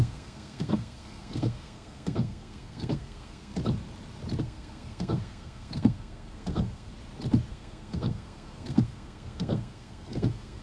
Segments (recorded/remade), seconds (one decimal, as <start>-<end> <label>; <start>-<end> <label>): 0.0-3.5 remade; 3.5-4.4 recorded; 4.4-6.9 remade; 6.9-7.5 recorded; 7.5-10.6 remade